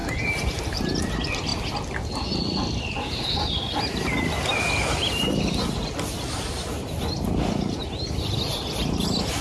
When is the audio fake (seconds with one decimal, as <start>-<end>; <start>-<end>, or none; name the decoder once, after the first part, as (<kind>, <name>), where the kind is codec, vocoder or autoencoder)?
none

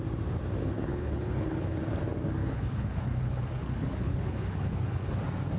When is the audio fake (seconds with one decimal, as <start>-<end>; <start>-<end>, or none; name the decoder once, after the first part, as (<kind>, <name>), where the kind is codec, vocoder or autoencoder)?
0.6-1.8 (codec, HILCodec); 2.4-5.1

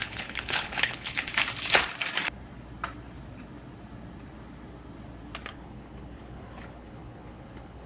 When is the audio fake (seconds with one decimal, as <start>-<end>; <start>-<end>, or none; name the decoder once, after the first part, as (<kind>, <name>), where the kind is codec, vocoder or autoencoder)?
0.0-1.3 (codec, HILCodec); 5.5-7.9

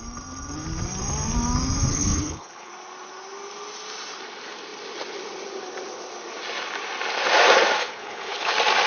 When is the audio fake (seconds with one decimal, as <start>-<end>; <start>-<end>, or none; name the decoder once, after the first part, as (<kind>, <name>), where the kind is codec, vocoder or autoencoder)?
1.9-2.7 (codec, HILCodec); 7.8-8.5

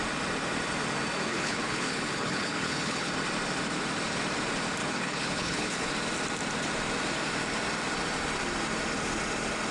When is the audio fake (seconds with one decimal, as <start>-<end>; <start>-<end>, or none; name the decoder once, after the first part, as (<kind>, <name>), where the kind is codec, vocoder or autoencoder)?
1.3-3.1 (codec, HILCodec); 4.8-5.9

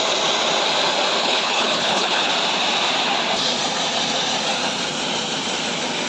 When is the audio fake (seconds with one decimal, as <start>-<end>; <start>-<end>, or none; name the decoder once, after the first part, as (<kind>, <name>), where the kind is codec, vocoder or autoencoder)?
1.2-2.3 (codec, HILCodec)